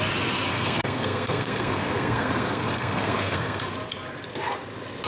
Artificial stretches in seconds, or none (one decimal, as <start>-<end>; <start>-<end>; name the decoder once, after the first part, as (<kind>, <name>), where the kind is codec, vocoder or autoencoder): 0.5-3.6 (codec, SNAC)